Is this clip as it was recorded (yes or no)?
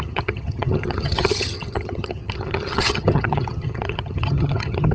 no